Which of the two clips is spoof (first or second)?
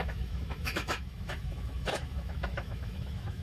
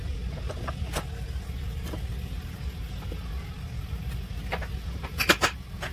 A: first